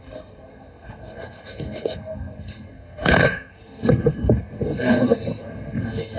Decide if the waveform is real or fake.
fake